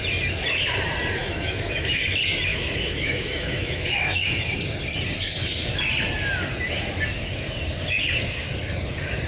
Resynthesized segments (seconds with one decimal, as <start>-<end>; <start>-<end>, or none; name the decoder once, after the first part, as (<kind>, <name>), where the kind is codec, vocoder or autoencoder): 1.2-2.0 (autoencoder, DAC-VAE); 2.5-4.5